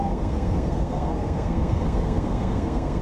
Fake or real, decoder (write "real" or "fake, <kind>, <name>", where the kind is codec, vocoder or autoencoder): fake, codec, SNAC